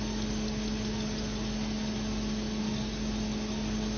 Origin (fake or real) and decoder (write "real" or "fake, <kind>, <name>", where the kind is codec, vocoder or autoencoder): real